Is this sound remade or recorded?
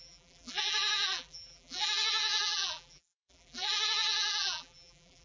remade